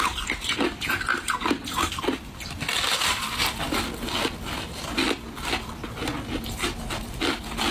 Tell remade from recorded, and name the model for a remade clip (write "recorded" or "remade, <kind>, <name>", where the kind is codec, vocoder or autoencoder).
recorded